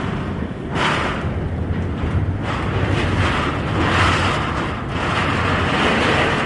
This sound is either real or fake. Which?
real